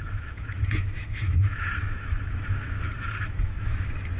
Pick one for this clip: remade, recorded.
remade